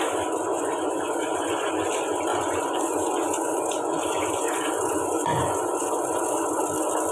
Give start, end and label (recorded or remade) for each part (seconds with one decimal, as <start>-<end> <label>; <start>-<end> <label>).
0.0-0.5 recorded; 0.5-1.7 remade; 1.7-2.3 recorded; 2.3-6.6 remade; 6.6-7.1 recorded